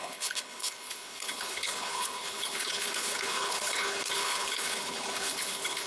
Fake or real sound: fake